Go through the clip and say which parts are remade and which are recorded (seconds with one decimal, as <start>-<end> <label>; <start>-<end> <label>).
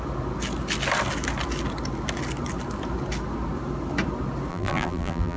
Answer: 0.0-4.5 recorded; 4.5-5.4 remade